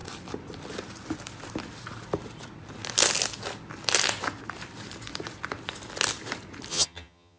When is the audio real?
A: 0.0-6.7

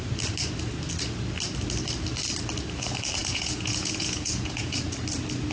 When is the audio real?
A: 0.0-3.2; 4.8-5.5